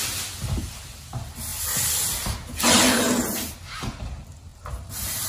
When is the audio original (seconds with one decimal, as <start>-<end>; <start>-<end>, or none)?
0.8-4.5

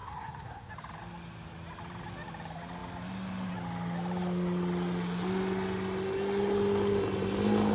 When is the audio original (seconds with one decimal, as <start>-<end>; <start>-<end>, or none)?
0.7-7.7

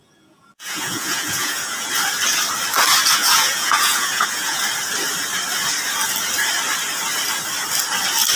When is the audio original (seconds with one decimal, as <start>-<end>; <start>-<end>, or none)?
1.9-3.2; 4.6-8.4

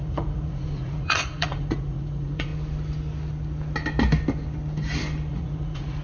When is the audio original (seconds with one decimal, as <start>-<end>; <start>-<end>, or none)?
2.5-5.3

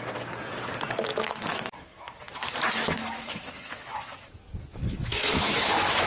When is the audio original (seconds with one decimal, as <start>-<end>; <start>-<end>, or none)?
0.0-1.1; 4.3-4.7

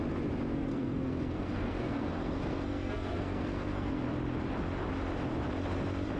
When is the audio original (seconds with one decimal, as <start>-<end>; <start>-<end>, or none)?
0.0-0.5; 4.0-6.2

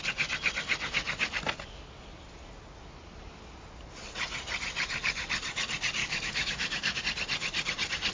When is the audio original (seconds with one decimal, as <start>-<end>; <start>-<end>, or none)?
0.0-6.0; 7.0-8.1